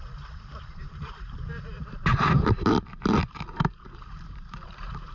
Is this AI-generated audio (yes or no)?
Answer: yes